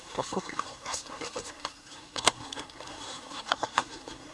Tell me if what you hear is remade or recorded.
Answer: remade